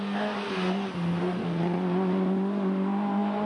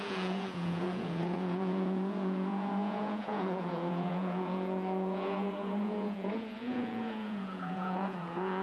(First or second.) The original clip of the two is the first